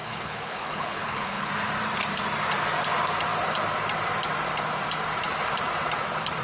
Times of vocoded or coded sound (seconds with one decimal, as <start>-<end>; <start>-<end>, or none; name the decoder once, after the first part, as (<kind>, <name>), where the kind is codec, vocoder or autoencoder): 0.0-1.5 (codec, HILCodec)